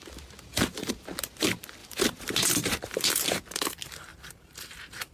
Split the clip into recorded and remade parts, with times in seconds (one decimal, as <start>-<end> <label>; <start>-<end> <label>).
0.0-1.8 recorded; 1.8-3.5 remade; 3.5-4.1 recorded; 4.1-5.1 remade